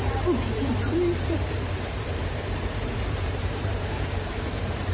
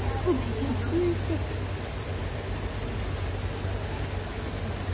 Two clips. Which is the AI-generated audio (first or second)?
first